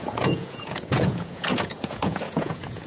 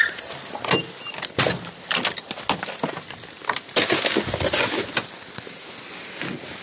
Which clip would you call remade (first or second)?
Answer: first